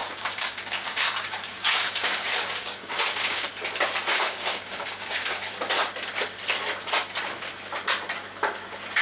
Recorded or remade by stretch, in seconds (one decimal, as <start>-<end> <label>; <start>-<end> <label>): 0.0-3.5 remade; 3.5-4.1 recorded; 4.1-5.5 remade; 5.5-9.0 recorded